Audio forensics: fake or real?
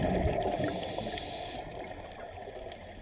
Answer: real